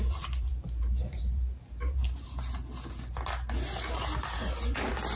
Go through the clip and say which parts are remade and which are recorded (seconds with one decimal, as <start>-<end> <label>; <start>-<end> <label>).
0.0-2.0 remade; 2.0-5.2 recorded